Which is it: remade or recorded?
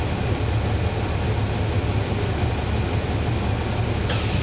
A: recorded